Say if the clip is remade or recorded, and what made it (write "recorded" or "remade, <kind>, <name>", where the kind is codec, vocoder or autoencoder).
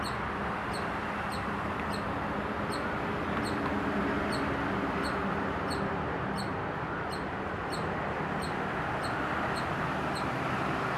recorded